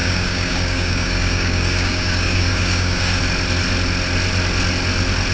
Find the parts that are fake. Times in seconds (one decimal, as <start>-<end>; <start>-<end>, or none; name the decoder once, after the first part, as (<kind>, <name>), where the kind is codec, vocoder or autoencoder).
0.0-3.2 (codec, DAC)